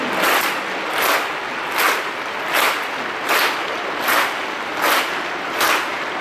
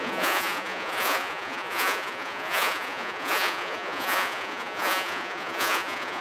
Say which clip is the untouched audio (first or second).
first